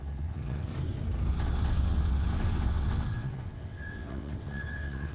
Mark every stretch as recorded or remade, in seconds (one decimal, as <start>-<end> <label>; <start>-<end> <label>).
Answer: 0.0-0.7 remade; 0.7-1.3 recorded; 1.3-5.1 remade